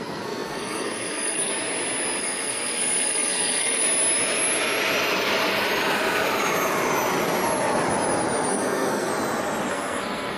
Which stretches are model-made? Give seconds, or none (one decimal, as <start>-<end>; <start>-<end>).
0.0-1.5; 2.2-3.8; 8.5-9.1; 9.7-10.4